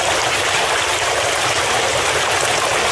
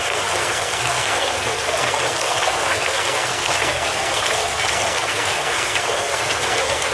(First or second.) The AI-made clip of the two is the second